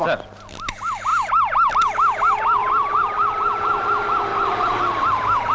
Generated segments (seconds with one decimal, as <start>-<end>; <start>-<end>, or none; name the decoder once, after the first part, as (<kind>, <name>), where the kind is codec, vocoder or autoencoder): 1.1-1.7 (vocoder, BigVGAN v2); 2.6-3.8